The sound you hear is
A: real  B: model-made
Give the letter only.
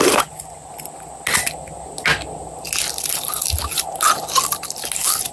A